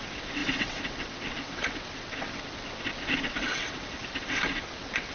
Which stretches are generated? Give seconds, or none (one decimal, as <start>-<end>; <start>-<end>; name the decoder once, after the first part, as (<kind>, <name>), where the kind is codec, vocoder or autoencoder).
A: 0.0-5.1 (vocoder, WaveNeXt)